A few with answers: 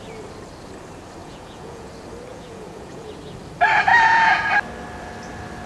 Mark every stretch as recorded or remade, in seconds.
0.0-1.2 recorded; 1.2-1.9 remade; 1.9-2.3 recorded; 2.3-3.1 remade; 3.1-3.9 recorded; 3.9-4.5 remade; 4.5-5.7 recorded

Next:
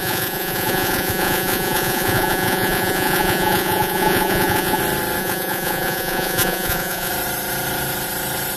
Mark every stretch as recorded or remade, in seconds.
0.0-4.8 remade; 4.8-5.2 recorded; 5.2-7.1 remade; 7.1-8.6 recorded

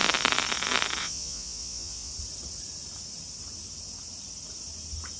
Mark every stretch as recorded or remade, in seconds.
0.0-1.0 recorded; 1.0-2.1 remade; 2.1-5.2 recorded